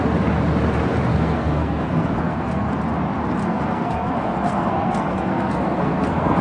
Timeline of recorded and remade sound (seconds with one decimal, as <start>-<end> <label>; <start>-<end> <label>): 0.0-1.1 recorded; 1.1-2.7 remade; 2.7-3.4 recorded; 3.4-6.4 remade